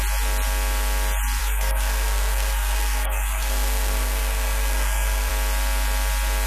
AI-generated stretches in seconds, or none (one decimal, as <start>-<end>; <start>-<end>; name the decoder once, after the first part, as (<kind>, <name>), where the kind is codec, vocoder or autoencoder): 1.4-5.3 (codec, SNAC)